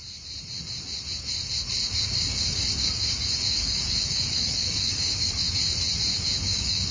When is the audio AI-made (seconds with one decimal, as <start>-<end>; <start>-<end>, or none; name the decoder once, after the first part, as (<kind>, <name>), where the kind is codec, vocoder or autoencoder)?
1.8-5.3 (codec, DAC); 6.1-6.9